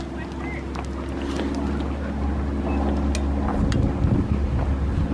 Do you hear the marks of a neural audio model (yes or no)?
no